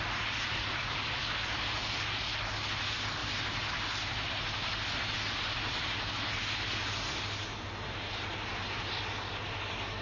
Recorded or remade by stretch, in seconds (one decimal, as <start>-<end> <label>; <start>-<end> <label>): 0.0-10.0 recorded